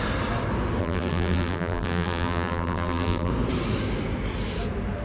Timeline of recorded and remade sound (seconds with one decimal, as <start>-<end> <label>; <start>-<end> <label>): 0.0-0.8 recorded; 0.8-3.3 remade; 3.3-5.0 recorded